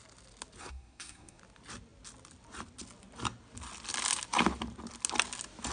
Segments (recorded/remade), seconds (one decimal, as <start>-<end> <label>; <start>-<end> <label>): 0.0-0.6 recorded; 0.6-1.4 remade; 1.4-5.7 recorded